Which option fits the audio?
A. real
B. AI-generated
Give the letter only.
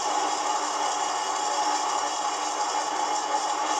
A